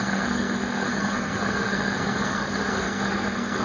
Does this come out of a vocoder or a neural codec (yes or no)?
yes